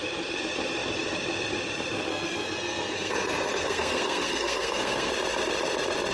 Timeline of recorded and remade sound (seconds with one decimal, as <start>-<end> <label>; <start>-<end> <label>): 0.0-2.1 recorded; 2.1-5.1 remade; 5.1-6.1 recorded